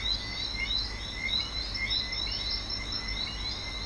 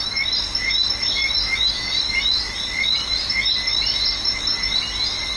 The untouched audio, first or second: first